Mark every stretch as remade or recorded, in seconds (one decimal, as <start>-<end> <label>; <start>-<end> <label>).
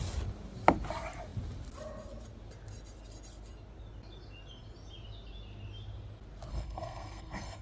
0.0-6.5 recorded; 6.5-7.6 remade